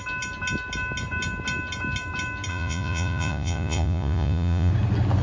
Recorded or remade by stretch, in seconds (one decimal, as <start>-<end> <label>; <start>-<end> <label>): 0.0-2.5 recorded; 2.5-4.7 remade; 4.7-5.2 recorded